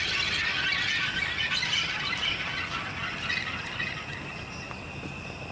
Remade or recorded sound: recorded